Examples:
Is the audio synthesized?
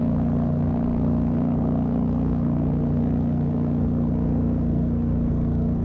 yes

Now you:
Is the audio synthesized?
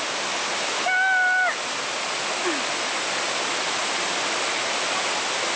no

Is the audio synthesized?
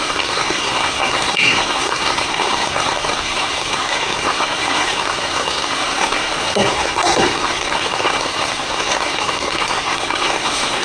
yes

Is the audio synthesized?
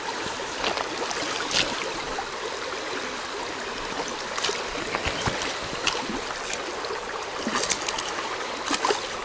no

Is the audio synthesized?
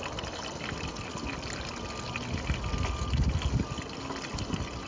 no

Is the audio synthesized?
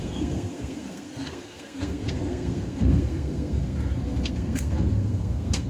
yes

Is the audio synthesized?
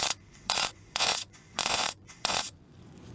yes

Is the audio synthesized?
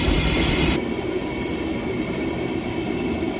yes